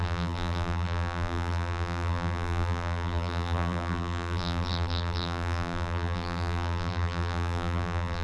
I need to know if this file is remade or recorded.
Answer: remade